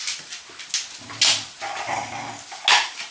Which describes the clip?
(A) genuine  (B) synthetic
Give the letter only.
A